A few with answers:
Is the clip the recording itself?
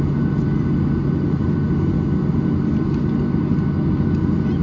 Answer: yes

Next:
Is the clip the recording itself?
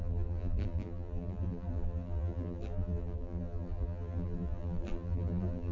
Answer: no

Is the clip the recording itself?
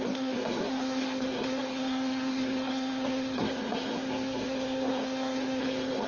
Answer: no